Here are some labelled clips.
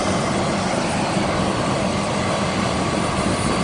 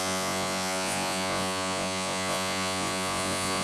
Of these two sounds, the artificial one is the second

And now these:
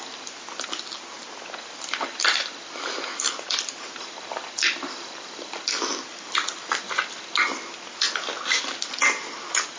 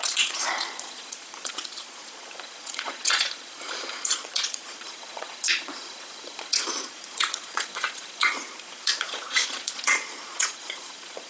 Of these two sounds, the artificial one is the second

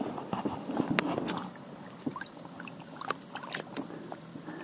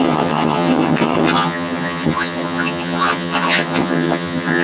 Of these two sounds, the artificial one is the second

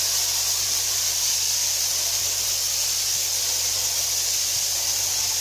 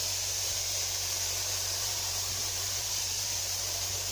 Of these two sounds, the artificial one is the second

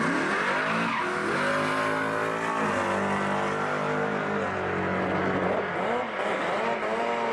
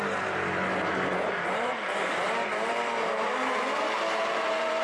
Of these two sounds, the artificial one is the second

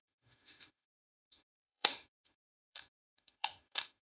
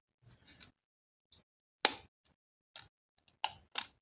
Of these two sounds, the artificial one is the first